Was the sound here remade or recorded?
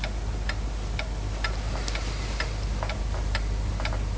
recorded